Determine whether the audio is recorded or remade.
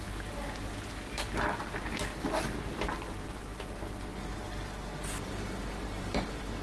recorded